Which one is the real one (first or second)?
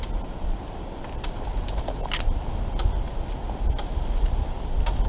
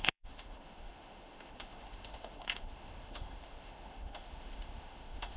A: first